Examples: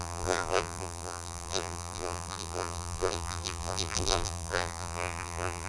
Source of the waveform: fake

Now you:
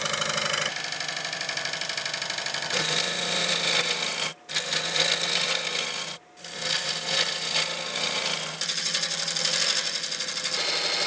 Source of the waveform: real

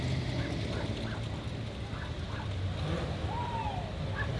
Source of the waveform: real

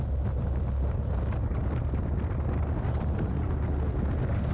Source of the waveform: real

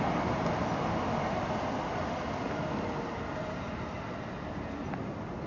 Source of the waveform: real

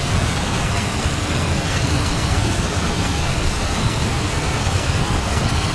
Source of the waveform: fake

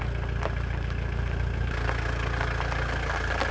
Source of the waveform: real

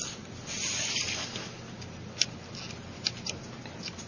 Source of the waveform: real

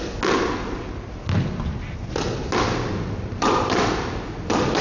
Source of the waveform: real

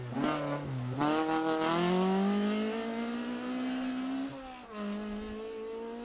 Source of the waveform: real